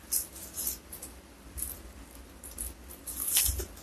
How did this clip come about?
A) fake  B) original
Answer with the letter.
B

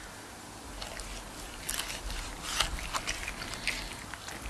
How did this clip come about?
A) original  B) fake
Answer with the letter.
A